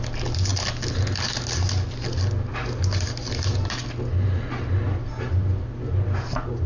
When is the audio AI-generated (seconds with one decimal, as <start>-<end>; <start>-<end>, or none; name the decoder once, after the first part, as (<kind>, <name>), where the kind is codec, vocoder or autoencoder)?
none